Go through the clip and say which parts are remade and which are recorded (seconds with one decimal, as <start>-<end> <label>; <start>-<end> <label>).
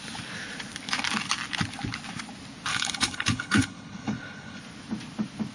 0.0-2.7 recorded; 2.7-4.6 remade; 4.6-5.5 recorded